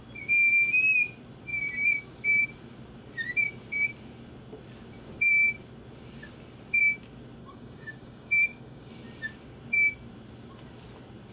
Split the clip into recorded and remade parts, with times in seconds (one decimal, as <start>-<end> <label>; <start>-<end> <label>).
0.0-7.4 recorded; 7.4-8.9 remade; 8.9-11.3 recorded